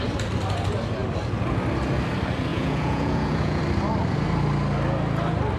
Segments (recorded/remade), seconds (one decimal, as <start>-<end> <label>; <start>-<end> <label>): 0.0-2.5 recorded; 2.5-3.6 remade; 3.6-5.6 recorded